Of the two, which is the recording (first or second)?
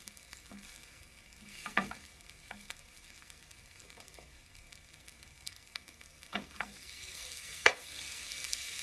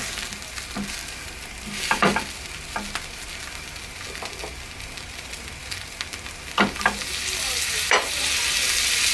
second